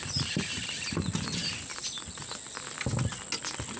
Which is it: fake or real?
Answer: real